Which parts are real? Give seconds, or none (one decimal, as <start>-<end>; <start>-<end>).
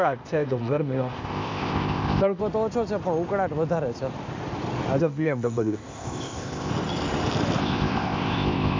2.4-5.0; 6.7-7.6